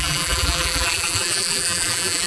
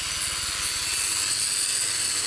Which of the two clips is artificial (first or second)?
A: first